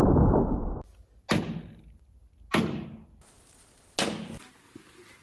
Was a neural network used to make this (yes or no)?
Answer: no